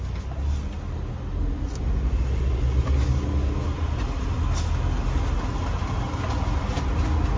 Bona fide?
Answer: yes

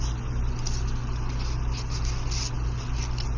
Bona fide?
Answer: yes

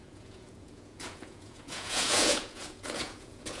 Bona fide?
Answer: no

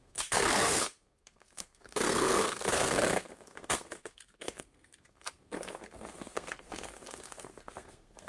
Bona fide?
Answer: no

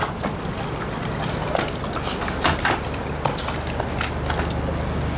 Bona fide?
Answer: yes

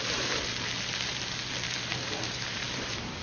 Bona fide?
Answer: no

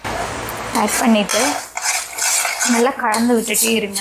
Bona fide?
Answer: yes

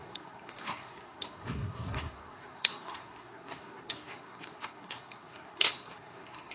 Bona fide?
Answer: no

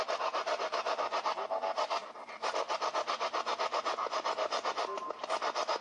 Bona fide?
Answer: no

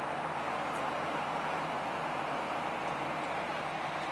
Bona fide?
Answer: yes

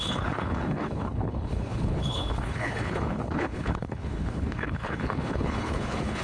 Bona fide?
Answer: no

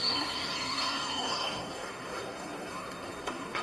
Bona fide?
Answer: no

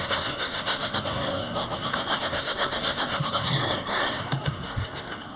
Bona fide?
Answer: no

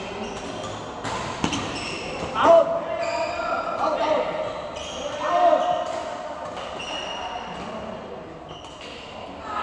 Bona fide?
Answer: yes